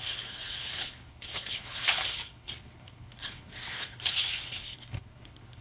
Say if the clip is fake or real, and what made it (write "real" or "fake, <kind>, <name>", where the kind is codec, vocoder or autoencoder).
fake, codec, HILCodec